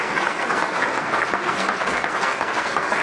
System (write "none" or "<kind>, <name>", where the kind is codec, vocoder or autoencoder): codec, SNAC